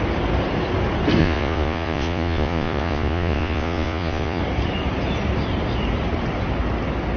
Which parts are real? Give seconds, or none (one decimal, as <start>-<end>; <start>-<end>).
0.0-1.2; 4.4-7.2